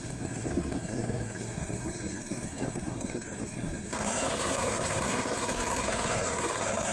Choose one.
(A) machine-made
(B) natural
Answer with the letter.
A